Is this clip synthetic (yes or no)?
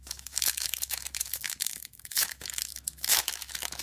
yes